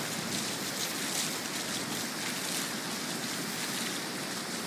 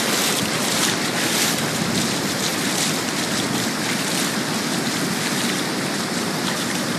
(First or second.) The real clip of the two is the first